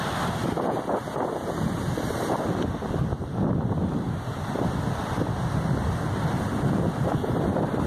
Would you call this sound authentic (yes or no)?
yes